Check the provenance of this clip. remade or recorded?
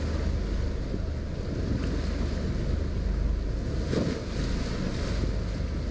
recorded